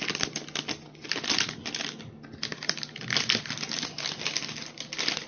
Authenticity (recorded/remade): recorded